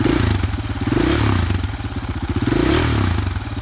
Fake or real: real